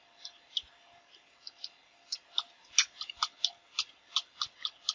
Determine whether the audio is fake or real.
real